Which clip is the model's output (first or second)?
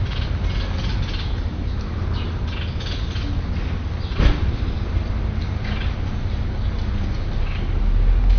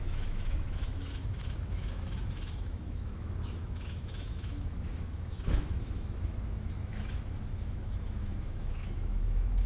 second